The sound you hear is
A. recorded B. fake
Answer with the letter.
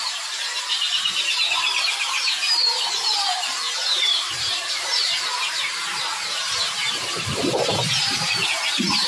B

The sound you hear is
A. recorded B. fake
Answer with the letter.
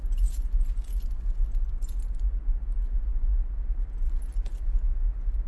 A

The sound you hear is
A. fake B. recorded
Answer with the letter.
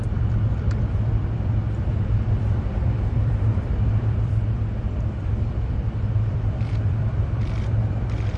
A